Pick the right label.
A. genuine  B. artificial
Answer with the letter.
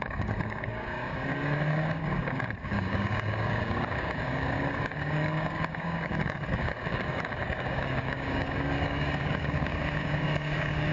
B